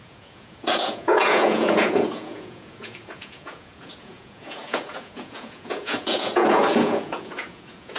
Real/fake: fake